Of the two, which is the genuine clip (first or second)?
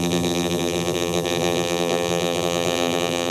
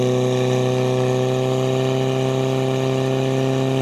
second